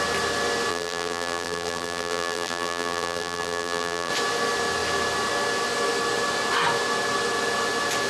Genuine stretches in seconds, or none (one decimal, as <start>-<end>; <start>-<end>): 0.0-0.7; 4.1-8.1